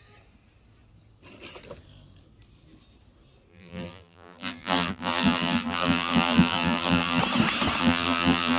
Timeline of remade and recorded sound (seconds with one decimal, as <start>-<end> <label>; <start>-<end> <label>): 0.0-3.5 recorded; 3.5-7.2 remade; 7.2-7.8 recorded; 7.8-8.6 remade

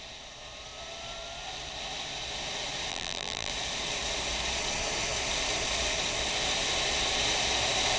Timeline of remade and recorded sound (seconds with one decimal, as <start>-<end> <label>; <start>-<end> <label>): 0.0-2.9 recorded; 2.9-3.5 remade; 3.5-8.0 recorded

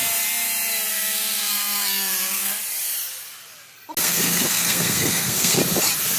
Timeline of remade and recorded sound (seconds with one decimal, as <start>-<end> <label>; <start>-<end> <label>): 0.0-0.9 recorded; 0.9-2.5 remade; 2.5-4.0 recorded; 4.0-5.6 remade; 5.6-6.2 recorded

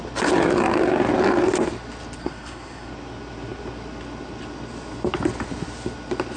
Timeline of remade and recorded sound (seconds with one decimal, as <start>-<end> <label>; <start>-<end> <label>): 0.0-2.2 recorded; 2.2-2.9 remade; 2.9-6.4 recorded

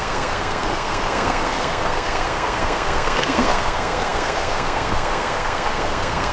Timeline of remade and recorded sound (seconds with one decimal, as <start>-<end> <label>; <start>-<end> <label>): 0.0-6.3 remade

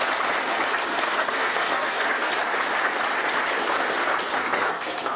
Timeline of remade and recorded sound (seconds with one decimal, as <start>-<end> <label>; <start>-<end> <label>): 0.0-0.9 recorded; 0.9-2.3 remade; 2.3-4.4 recorded; 4.4-5.2 remade

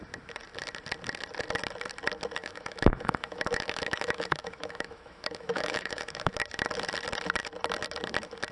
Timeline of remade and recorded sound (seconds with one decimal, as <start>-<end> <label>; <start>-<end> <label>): 0.0-2.4 recorded; 2.4-6.3 remade; 6.3-8.5 recorded

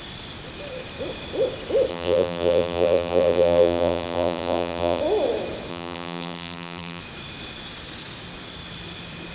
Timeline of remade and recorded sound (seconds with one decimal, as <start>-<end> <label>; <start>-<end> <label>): 0.0-1.9 recorded; 1.9-5.0 remade; 5.0-5.7 recorded; 5.7-7.0 remade; 7.0-9.3 recorded